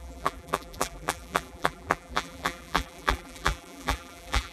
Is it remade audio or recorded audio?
remade